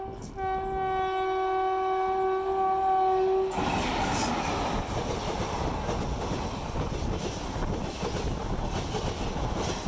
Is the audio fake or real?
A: real